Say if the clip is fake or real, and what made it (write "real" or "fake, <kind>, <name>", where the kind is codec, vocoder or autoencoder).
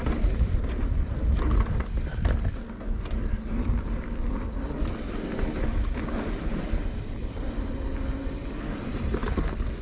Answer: real